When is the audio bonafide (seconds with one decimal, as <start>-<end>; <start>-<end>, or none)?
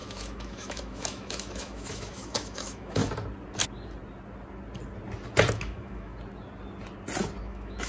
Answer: 3.0-5.5; 6.1-7.4